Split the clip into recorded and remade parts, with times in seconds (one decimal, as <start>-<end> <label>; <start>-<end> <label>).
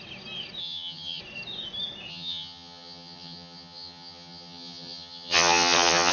0.0-0.6 recorded; 0.6-1.2 remade; 1.2-2.1 recorded; 2.1-6.1 remade